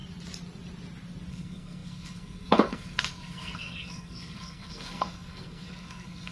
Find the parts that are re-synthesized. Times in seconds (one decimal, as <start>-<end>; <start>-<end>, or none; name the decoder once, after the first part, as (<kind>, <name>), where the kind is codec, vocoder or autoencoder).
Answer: 1.3-6.3 (codec, SNAC)